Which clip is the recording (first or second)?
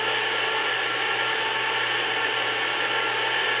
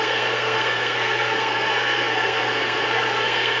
first